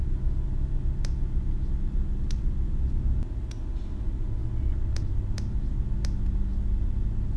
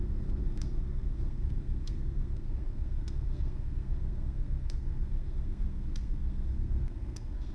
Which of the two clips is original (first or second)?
first